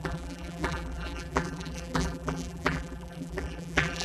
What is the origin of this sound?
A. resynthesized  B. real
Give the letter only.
A